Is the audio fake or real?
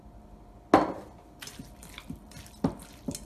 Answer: real